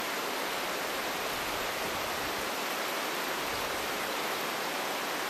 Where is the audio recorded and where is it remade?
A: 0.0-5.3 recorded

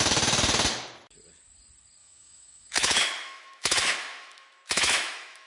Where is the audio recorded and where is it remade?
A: 0.0-2.0 recorded; 2.0-5.5 remade

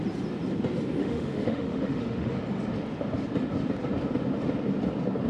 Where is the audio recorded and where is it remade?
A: 0.0-1.0 recorded; 1.0-2.3 remade; 2.3-5.3 recorded

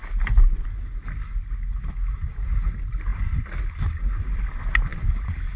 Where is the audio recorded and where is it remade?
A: 0.0-5.6 recorded

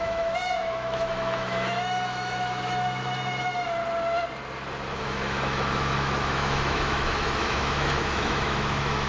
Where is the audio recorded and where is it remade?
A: 0.0-3.8 remade; 3.8-5.0 recorded; 5.0-9.1 remade

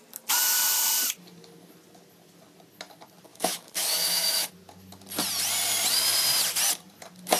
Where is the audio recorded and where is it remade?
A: 0.0-3.3 recorded; 3.3-4.5 remade; 4.5-7.4 recorded

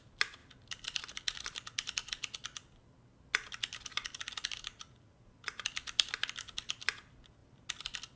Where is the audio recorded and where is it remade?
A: 0.0-8.2 recorded